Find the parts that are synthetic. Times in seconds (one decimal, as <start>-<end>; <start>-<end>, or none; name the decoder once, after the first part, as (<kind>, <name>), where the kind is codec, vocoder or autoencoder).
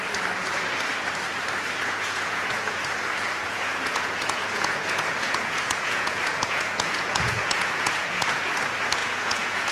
1.8-2.8 (vocoder, Vocos); 3.4-8.4; 9.0-9.7